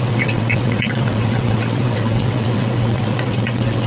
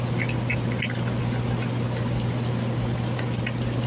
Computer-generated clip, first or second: first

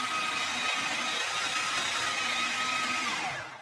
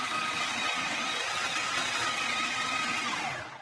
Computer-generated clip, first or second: second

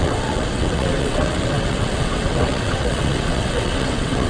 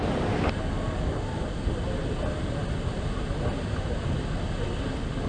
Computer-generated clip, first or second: first